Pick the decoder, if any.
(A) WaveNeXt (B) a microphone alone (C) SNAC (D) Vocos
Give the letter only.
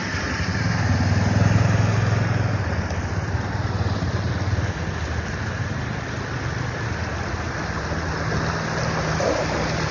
B